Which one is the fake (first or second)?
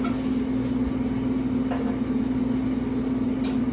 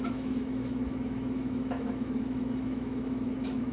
second